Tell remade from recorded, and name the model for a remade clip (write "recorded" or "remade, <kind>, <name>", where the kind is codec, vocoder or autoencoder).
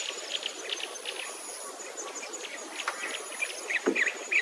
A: recorded